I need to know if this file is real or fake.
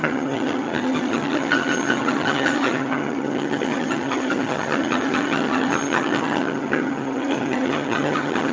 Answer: fake